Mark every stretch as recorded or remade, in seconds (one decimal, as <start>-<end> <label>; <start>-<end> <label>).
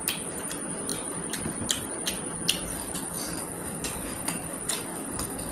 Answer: 0.0-2.7 recorded; 2.7-5.5 remade